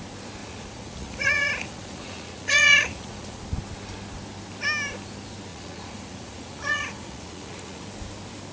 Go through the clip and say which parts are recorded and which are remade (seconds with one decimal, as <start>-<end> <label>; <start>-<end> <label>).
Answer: 0.0-0.4 recorded; 0.4-3.4 remade; 3.4-5.5 recorded; 5.5-7.8 remade; 7.8-8.5 recorded